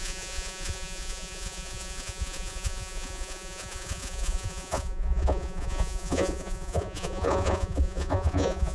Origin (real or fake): fake